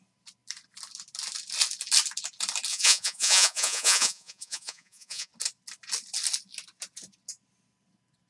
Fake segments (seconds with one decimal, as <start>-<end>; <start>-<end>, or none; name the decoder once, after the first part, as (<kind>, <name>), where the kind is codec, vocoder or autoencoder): 2.7-5.3 (vocoder, Vocos)